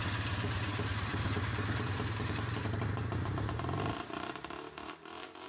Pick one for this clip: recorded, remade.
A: remade